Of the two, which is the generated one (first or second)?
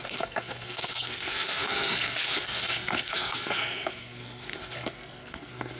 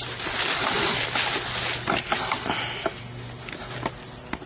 first